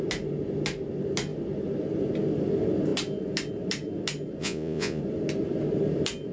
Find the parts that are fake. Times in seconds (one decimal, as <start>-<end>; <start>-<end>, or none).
4.4-5.0